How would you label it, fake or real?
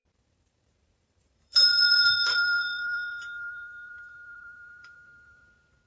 fake